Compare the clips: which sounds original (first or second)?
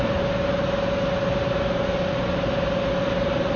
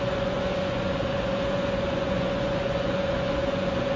first